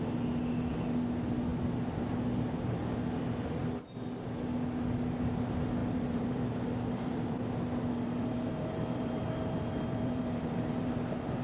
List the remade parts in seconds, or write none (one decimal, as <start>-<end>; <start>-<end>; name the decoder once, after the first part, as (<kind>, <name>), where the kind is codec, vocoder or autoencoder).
5.8-10.9 (vocoder, BigVGAN v2)